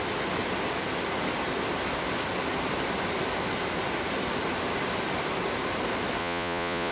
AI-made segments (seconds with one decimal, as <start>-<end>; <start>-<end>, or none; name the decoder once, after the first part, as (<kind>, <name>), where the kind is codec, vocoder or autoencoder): 6.2-6.9 (vocoder, Vocos)